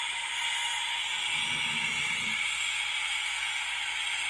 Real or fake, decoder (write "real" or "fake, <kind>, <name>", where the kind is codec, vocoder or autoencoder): real